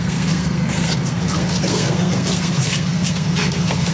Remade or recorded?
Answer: remade